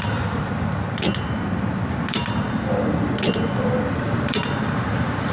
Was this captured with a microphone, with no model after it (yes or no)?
no